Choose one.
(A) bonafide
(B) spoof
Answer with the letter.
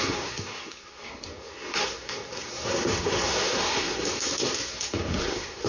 B